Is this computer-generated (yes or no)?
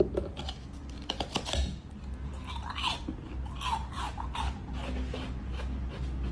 no